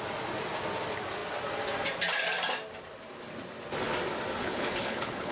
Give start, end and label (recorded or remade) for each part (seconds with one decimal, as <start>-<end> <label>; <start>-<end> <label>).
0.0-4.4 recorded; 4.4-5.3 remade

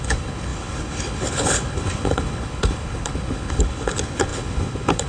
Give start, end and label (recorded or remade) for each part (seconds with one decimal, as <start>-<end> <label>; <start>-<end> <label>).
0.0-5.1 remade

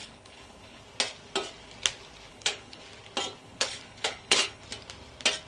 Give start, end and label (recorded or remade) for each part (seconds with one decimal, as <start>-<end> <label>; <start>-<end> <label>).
0.0-0.8 remade; 0.8-2.3 recorded; 2.3-2.8 remade; 2.8-3.4 recorded; 3.4-4.6 remade; 4.6-5.5 recorded

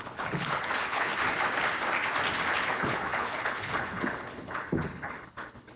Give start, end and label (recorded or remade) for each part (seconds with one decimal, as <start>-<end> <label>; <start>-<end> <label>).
0.0-1.1 remade; 1.1-2.5 recorded; 2.5-5.8 remade

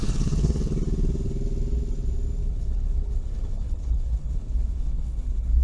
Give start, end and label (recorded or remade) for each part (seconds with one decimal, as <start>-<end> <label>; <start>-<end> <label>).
0.0-0.7 remade; 0.7-2.4 recorded; 2.4-5.6 remade

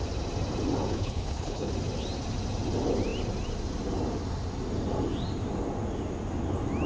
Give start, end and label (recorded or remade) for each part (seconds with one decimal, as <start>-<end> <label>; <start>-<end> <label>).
0.0-0.9 recorded; 0.9-1.7 remade; 1.7-6.9 recorded